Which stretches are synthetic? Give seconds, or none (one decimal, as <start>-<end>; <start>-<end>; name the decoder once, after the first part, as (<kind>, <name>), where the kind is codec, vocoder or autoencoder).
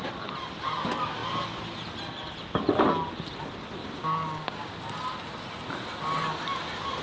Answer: 3.8-4.7 (codec, DAC)